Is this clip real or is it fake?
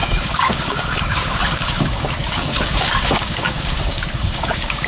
fake